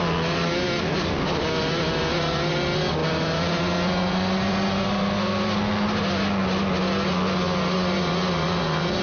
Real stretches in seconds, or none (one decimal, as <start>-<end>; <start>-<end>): 0.0-9.0